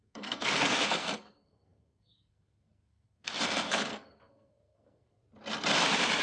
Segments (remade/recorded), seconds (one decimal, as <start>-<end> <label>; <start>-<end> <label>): 0.0-5.2 remade; 5.2-6.2 recorded